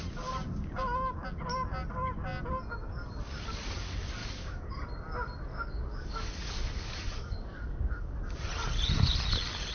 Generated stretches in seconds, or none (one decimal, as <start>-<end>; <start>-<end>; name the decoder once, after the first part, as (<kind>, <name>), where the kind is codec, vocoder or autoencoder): 4.2-4.7 (codec, DAC); 5.5-8.2